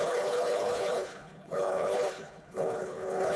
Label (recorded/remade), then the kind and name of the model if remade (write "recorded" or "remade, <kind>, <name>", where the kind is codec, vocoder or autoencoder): remade, codec, HILCodec